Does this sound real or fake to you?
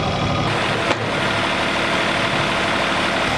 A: real